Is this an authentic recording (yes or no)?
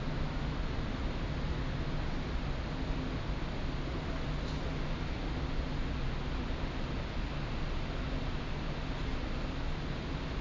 yes